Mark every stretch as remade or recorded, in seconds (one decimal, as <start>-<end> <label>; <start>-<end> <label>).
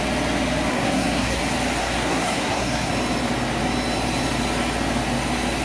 0.0-0.7 recorded; 0.7-1.4 remade; 1.4-1.8 recorded; 1.8-2.9 remade; 2.9-5.6 recorded